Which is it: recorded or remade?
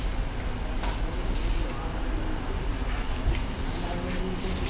recorded